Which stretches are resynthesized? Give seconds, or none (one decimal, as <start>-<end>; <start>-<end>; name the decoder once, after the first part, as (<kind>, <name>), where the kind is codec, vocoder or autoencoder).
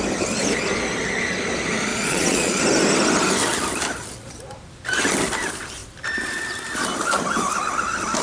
1.9-2.6 (vocoder, Vocos)